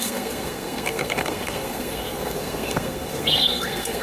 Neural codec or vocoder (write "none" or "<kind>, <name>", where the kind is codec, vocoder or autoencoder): codec, SNAC